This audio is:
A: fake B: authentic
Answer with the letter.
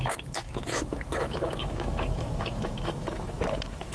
A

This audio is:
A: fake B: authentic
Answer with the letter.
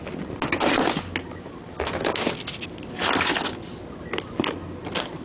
B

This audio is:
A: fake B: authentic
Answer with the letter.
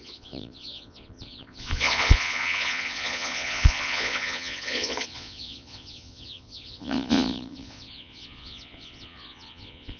A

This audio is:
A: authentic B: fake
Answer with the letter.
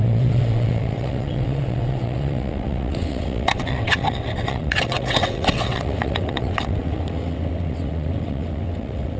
B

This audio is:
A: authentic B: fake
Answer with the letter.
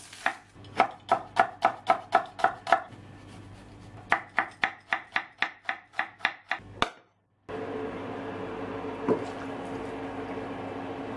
A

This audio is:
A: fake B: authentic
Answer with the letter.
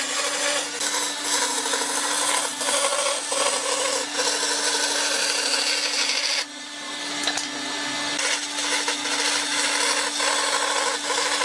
B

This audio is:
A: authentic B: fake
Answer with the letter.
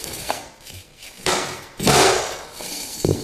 B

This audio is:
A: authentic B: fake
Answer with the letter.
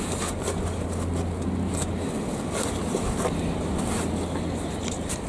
A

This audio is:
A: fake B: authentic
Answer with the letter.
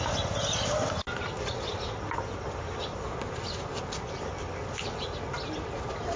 B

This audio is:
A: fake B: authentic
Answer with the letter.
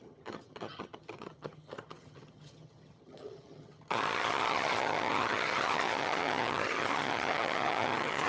A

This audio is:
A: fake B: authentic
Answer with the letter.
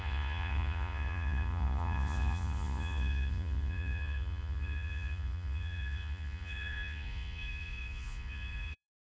A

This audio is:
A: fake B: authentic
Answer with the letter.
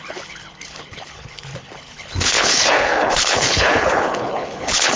A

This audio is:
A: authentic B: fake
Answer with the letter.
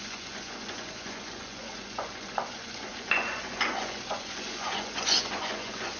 B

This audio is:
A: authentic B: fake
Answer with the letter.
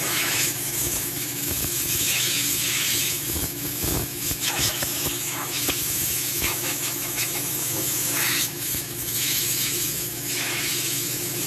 B